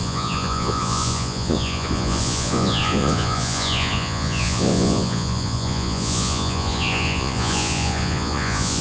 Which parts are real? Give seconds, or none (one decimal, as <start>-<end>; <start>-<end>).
none